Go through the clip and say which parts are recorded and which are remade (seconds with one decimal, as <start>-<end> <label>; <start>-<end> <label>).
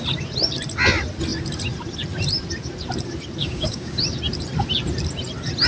0.0-3.4 recorded; 3.4-4.0 remade; 4.0-5.7 recorded